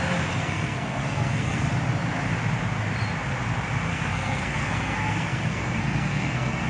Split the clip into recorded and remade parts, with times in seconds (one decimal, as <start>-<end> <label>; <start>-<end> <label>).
0.0-0.4 recorded; 0.4-1.7 remade; 1.7-3.9 recorded; 3.9-6.7 remade